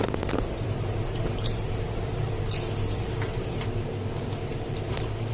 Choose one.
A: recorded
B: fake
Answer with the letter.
A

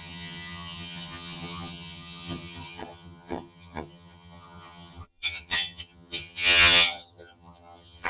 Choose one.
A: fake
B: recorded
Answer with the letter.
A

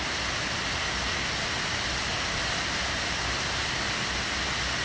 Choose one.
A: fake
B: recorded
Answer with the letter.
B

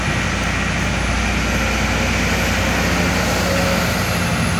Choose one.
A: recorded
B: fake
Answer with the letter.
A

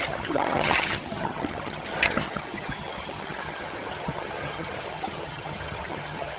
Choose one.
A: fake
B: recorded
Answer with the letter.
A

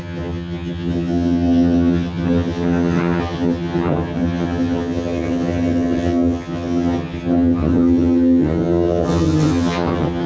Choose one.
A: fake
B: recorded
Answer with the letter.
A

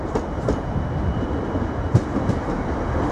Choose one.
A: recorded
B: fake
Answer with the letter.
A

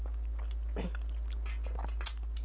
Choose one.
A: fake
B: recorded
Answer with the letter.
B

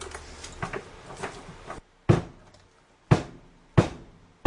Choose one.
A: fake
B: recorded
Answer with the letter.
B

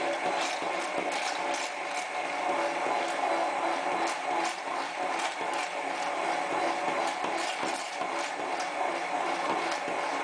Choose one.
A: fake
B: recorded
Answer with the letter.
B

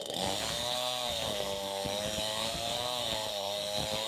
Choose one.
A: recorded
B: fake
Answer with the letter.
B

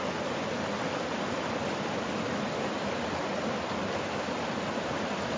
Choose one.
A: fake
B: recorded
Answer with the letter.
B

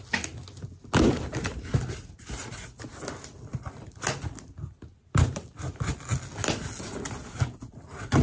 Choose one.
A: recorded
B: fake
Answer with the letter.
A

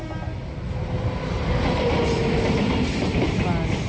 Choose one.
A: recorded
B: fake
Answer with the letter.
A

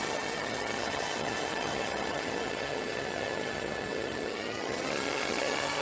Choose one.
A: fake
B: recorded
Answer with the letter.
A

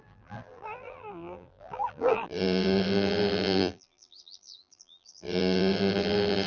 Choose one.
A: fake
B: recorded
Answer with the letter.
A